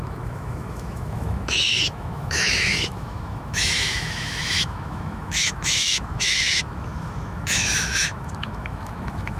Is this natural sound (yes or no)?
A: no